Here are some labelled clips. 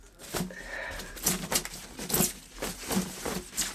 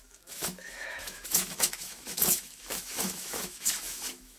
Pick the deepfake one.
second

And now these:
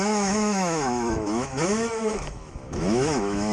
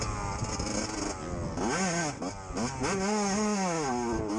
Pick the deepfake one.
first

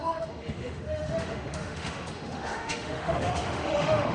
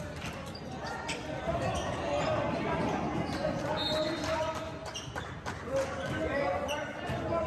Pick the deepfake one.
first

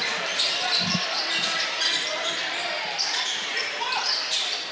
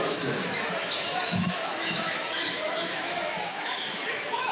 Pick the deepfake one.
second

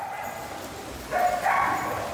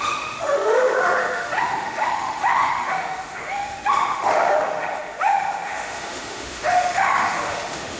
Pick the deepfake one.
second